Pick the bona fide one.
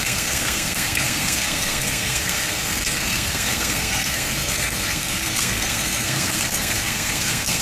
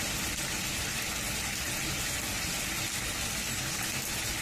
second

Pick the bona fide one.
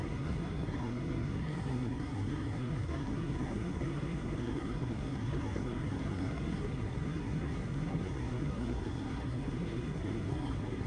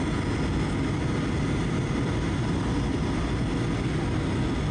second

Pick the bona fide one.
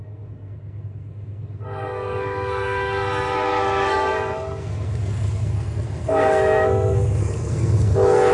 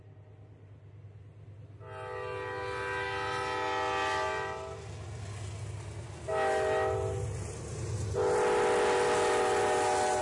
second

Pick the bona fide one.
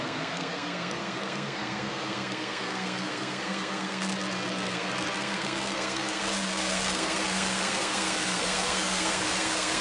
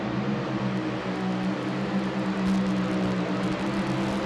second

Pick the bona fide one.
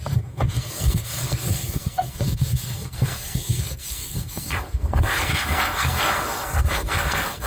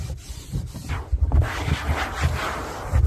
second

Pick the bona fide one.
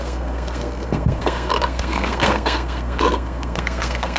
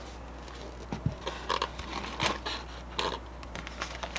second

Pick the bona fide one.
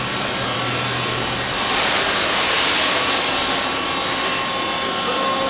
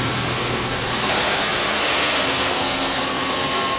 first